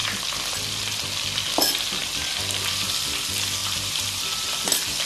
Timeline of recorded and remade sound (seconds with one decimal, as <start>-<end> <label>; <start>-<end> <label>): 0.0-3.6 recorded; 3.6-4.6 remade; 4.6-5.0 recorded

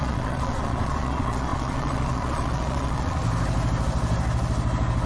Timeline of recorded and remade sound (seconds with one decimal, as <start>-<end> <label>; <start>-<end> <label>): 0.0-3.2 remade; 3.2-5.1 recorded

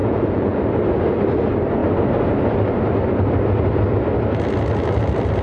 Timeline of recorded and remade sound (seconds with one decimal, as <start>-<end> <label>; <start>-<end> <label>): 0.0-0.6 remade; 0.6-5.4 recorded

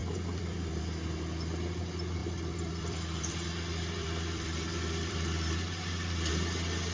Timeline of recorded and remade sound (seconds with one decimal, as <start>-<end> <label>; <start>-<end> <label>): 0.0-0.8 remade; 0.8-2.2 recorded; 2.2-6.3 remade; 6.3-6.9 recorded

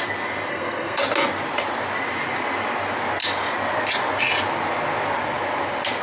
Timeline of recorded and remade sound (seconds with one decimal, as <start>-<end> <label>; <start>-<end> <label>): 0.0-0.5 recorded; 0.5-1.0 remade; 1.0-6.0 recorded

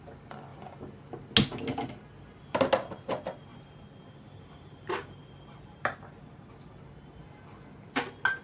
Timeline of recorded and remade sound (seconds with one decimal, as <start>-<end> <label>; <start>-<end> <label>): 0.0-3.5 recorded; 3.5-6.5 remade; 6.5-8.4 recorded